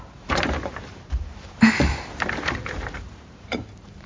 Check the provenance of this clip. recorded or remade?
remade